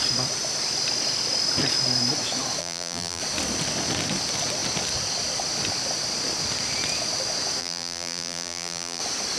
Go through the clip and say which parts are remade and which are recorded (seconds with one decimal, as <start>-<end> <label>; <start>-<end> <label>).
0.0-2.6 recorded; 2.6-3.2 remade; 3.2-7.6 recorded; 7.6-9.0 remade; 9.0-9.4 recorded